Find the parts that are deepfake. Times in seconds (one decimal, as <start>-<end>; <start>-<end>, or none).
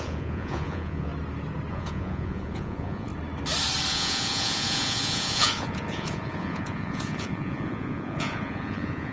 0.0-1.1; 1.7-3.1; 3.9-9.1